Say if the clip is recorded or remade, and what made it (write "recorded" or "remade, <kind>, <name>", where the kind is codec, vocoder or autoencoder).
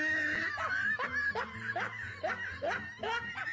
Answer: recorded